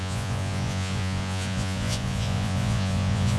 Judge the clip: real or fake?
fake